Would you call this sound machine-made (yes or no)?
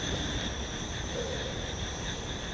yes